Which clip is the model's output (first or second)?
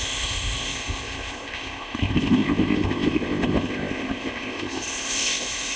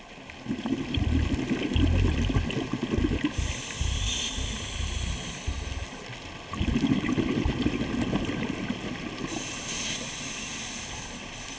first